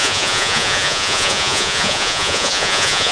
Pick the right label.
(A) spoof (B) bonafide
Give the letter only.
A